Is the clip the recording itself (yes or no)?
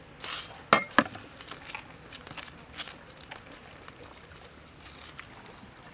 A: yes